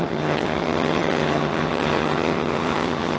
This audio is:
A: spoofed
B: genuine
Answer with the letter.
A